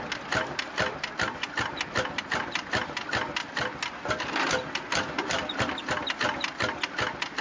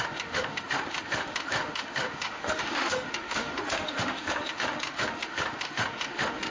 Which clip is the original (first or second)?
first